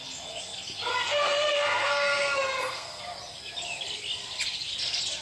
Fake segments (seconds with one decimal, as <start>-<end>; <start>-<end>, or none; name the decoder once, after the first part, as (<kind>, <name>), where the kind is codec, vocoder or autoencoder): 0.9-3.0 (codec, SNAC)